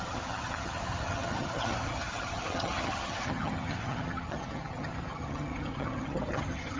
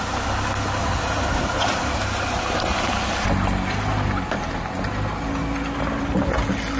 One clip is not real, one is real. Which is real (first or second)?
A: second